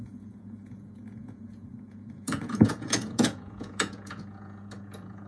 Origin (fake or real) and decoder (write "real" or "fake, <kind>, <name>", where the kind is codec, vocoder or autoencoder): fake, vocoder, Vocos